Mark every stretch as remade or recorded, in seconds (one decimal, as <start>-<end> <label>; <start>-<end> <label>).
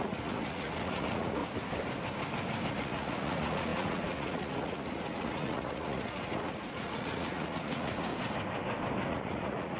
0.0-1.4 remade; 1.4-2.7 recorded; 2.7-8.1 remade; 8.1-9.1 recorded; 9.1-9.8 remade